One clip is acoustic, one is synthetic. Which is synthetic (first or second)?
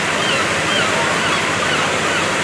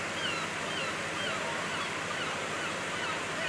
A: first